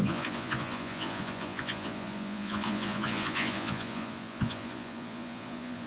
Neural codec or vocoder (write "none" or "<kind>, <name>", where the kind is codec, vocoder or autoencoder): vocoder, Vocos